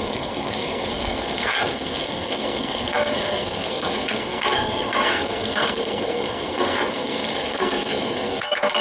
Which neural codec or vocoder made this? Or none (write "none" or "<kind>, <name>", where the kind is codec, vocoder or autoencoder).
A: codec, SNAC